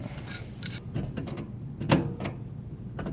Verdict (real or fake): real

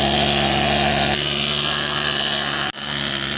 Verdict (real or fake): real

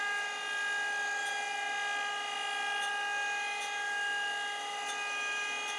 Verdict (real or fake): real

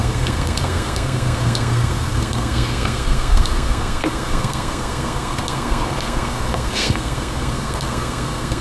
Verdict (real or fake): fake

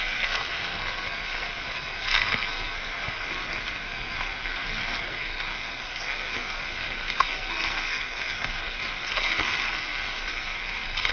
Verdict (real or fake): fake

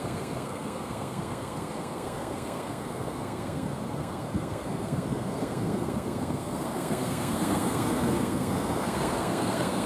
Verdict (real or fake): fake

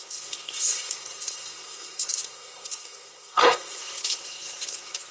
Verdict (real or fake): fake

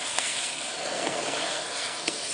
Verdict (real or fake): fake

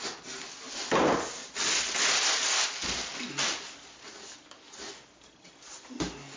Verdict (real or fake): real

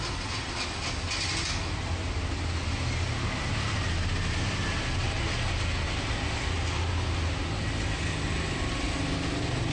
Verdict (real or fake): real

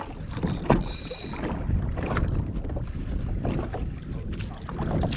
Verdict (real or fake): real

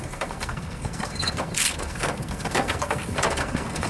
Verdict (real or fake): fake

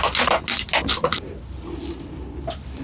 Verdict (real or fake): real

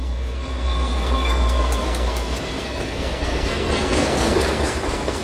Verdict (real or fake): fake